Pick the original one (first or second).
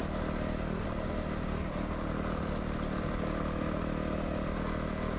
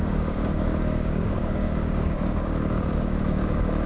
first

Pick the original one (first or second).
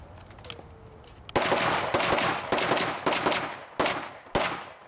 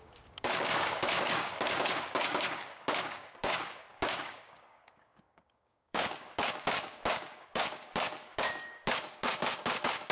first